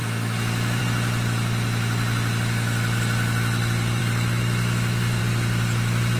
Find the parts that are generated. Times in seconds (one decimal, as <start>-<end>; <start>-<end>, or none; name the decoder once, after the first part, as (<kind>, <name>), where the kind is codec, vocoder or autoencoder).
0.0-0.8 (autoencoder, DAC-VAE); 4.0-5.2